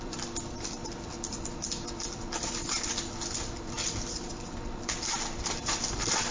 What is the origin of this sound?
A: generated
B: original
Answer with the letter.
A